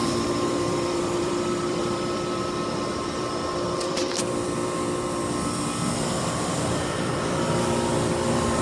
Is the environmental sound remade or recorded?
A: remade